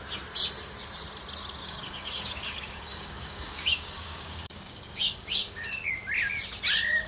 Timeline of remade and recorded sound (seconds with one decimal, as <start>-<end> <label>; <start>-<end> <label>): 0.0-1.6 recorded; 1.6-5.9 remade; 5.9-7.1 recorded